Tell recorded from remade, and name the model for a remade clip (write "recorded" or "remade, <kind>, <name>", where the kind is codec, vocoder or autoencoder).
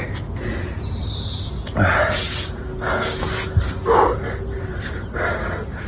recorded